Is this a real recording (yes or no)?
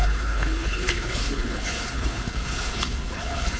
no